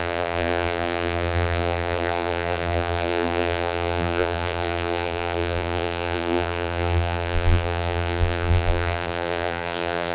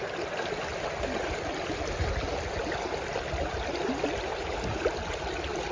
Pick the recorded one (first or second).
second